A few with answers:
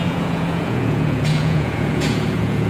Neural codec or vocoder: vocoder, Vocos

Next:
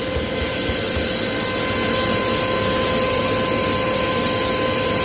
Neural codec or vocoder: none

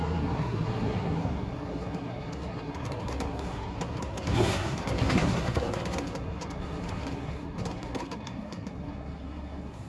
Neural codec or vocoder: codec, SNAC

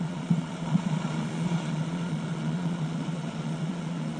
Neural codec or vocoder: vocoder, Vocos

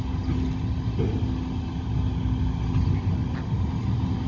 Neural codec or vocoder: none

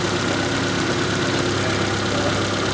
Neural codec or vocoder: none